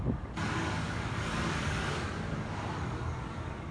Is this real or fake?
fake